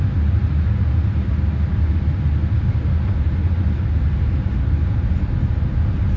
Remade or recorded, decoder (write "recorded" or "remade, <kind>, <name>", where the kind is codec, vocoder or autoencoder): recorded